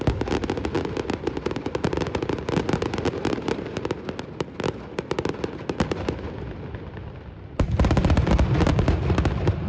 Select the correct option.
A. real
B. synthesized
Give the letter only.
A